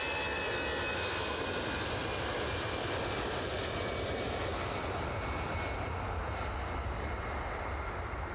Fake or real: real